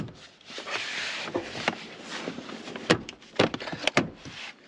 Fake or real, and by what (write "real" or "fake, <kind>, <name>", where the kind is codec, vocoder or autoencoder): fake, vocoder, BigVGAN v2